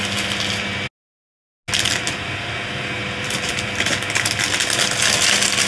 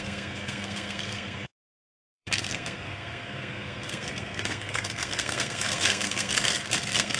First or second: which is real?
first